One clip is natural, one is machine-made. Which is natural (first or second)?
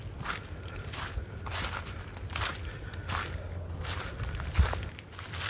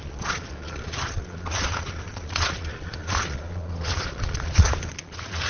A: first